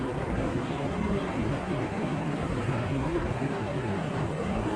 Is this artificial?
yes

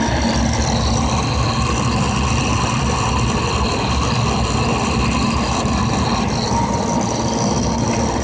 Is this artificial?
no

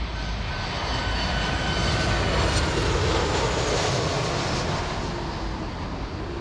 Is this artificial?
no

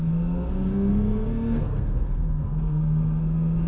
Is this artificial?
yes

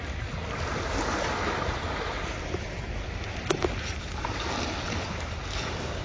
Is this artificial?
no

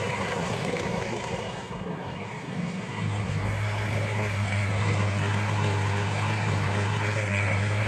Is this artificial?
yes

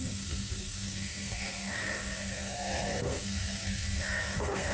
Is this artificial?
yes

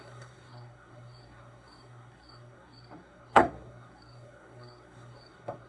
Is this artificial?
yes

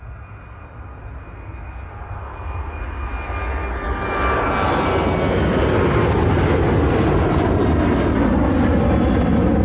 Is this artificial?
no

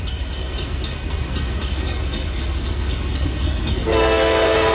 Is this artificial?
yes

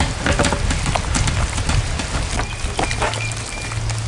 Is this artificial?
no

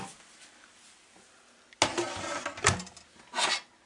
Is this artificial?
no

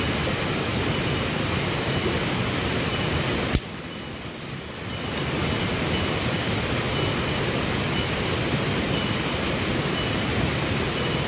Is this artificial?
no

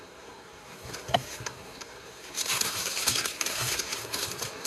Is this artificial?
yes